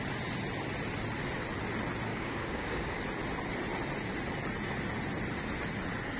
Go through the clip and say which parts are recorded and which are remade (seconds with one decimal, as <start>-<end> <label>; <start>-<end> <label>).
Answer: 0.0-2.1 recorded; 2.1-3.0 remade; 3.0-6.2 recorded